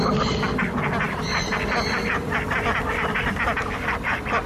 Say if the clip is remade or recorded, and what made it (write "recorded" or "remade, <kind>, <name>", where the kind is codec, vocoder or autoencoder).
recorded